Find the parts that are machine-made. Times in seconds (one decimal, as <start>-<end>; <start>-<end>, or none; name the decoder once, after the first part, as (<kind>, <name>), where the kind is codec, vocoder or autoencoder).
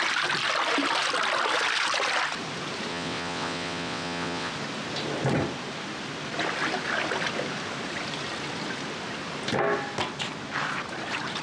2.9-4.5 (vocoder, WaveNeXt)